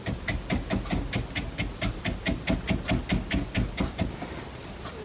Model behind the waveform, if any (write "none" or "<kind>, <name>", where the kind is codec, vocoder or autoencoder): none